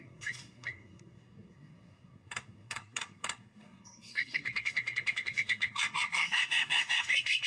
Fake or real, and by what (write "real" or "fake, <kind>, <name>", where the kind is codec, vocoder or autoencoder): fake, codec, SNAC